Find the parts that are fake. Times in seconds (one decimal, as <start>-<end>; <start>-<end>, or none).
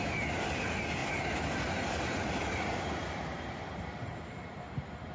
none